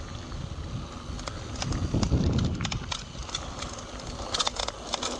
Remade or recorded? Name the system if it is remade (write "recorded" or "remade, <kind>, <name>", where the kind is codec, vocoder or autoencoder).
recorded